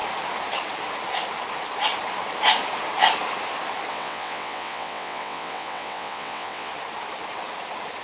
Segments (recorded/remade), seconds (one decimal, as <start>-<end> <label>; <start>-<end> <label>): 0.0-3.9 recorded; 3.9-6.7 remade; 6.7-8.0 recorded